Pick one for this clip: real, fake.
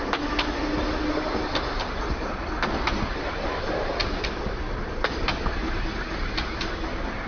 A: real